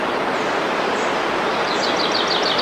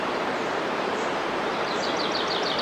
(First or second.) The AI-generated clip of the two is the second